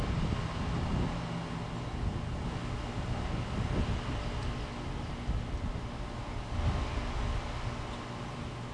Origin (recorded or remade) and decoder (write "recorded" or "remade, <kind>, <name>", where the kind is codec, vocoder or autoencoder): recorded